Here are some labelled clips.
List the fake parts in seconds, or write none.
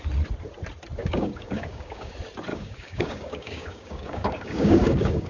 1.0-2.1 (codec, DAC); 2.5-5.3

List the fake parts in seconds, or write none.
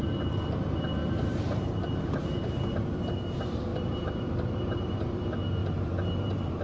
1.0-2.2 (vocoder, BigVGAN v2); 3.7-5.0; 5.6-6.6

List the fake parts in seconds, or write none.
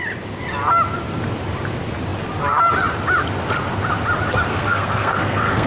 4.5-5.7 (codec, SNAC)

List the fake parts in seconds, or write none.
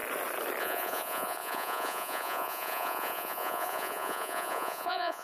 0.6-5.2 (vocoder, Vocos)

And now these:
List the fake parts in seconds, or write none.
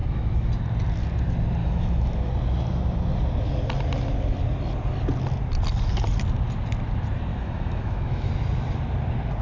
0.0-0.5 (autoencoder, DAC-VAE); 1.6-2.3; 7.3-8.3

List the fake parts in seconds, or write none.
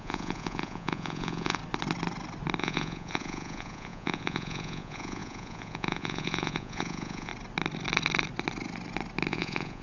0.0-1.6 (vocoder, Vocos); 2.6-7.3; 9.3-9.8